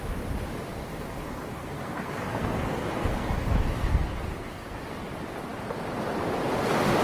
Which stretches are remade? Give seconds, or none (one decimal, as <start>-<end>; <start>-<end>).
0.8-5.0